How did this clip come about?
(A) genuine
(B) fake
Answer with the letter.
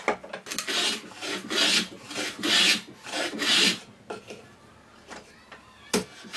A